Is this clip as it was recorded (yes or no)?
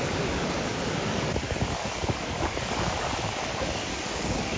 no